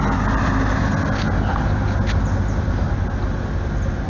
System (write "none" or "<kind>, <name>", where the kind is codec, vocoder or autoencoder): none